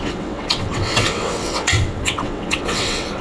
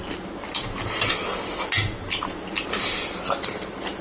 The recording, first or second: second